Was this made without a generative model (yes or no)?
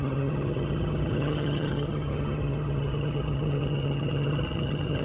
no